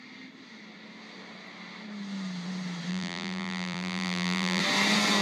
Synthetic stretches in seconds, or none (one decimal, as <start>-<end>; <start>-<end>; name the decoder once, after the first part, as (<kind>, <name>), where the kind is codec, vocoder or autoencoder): 2.9-4.6 (vocoder, BigVGAN v2)